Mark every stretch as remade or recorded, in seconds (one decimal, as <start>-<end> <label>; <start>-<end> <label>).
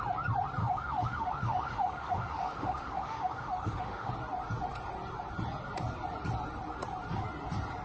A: 0.0-0.6 recorded; 0.6-4.1 remade; 4.1-7.8 recorded